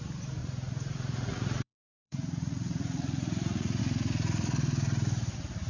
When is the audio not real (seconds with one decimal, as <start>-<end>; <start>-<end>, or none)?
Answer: 0.4-3.8